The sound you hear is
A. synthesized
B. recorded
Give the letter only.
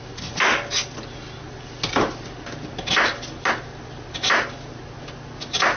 B